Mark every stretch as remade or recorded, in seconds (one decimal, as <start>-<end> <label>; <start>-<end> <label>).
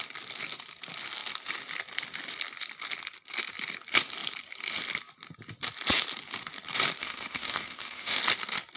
0.0-7.0 recorded; 7.0-8.2 remade; 8.2-8.8 recorded